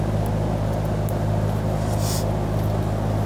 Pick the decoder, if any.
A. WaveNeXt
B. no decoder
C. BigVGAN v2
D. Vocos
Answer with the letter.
B